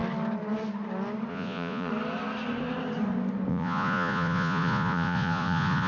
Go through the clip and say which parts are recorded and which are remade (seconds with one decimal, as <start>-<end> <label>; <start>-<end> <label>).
0.0-1.3 recorded; 1.3-1.9 remade; 1.9-3.5 recorded; 3.5-5.9 remade